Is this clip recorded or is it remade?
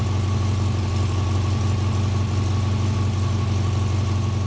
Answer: recorded